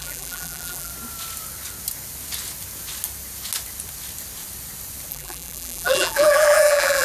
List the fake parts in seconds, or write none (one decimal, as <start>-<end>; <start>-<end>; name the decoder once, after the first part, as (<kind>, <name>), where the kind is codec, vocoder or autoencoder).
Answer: 0.0-0.9 (vocoder, BigVGAN v2); 5.1-7.0